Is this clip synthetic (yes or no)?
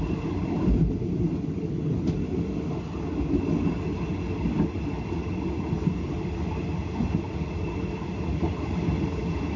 no